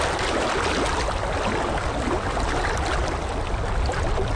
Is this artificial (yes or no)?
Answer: no